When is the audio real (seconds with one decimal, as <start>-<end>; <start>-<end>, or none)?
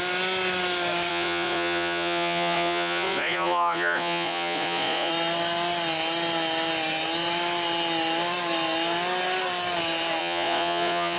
0.0-1.1; 5.1-10.2